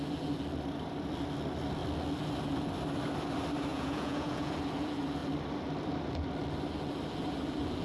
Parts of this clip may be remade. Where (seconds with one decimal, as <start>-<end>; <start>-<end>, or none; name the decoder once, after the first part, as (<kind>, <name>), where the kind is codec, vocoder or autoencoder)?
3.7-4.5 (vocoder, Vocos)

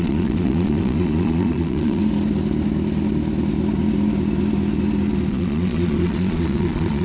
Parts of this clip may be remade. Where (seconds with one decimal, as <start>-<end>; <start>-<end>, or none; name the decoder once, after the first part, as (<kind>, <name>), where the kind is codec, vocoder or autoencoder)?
0.0-2.0 (vocoder, Vocos); 5.3-7.0

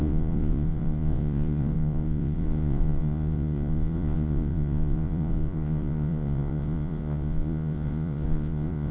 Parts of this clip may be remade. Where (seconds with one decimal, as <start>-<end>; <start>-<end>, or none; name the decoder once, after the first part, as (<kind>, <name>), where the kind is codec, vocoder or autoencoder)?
0.0-8.9 (vocoder, Vocos)

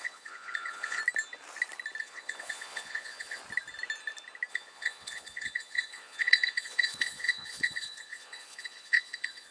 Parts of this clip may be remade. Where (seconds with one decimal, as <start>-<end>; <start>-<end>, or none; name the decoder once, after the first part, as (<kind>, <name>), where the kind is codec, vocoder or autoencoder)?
0.0-1.0 (vocoder, Vocos); 2.0-3.4; 4.5-9.5